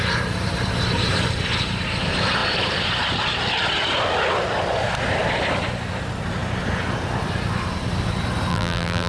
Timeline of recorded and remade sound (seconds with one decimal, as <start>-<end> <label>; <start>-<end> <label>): 0.0-8.5 recorded; 8.5-9.1 remade